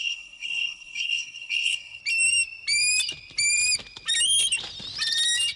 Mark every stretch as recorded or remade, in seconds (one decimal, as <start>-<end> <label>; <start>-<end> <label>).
0.0-2.0 remade; 2.0-5.6 recorded